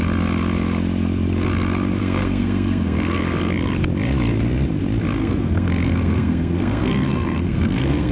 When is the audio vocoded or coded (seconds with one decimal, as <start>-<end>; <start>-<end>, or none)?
2.0-3.2; 5.2-8.1